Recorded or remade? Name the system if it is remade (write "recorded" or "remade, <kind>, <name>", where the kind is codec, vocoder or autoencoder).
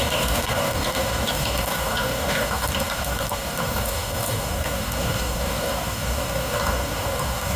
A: remade, codec, DAC